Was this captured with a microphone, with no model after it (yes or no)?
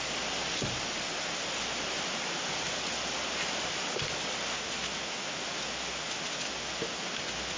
yes